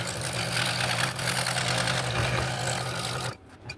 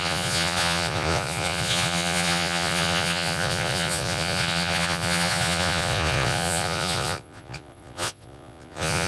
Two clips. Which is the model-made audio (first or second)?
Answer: second